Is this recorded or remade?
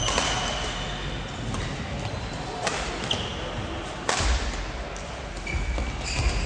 recorded